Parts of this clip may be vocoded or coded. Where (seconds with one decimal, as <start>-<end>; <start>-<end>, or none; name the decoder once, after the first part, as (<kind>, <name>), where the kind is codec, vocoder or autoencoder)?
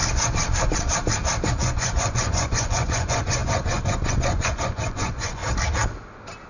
1.5-5.4 (vocoder, Vocos)